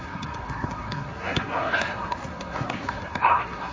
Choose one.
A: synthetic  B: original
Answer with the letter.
A